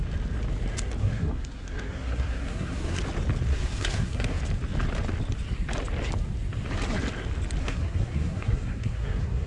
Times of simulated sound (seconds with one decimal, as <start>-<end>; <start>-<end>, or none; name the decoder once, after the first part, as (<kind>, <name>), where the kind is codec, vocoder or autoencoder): 1.0-3.0 (codec, SNAC); 3.5-4.4; 7.6-9.5